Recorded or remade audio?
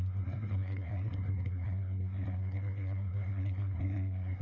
remade